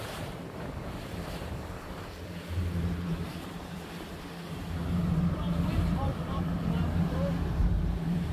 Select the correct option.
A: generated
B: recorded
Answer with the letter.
A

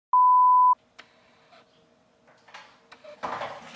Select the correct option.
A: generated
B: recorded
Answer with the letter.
B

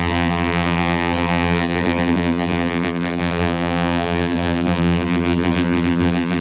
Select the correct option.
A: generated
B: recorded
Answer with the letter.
A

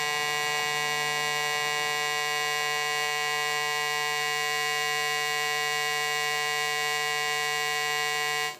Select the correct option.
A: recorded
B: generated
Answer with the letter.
A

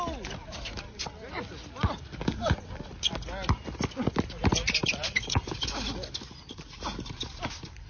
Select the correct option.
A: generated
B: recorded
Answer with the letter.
B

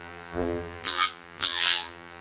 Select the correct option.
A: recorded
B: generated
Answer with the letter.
B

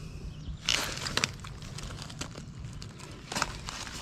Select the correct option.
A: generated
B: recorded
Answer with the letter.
B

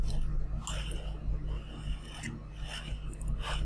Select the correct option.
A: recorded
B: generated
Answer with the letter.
A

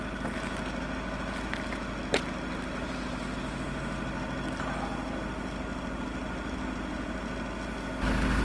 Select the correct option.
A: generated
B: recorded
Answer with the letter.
B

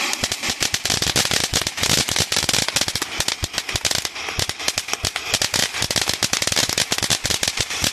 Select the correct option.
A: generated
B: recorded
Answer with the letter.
B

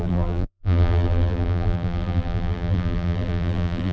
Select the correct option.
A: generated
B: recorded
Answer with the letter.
A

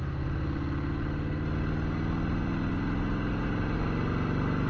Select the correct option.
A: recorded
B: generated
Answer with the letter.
A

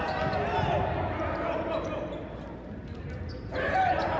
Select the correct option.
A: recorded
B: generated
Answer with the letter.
A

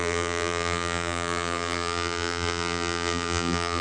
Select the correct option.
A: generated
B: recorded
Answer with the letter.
A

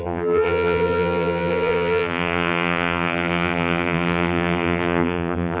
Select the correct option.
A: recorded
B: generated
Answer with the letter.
B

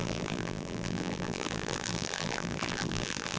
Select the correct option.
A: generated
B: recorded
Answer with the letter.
A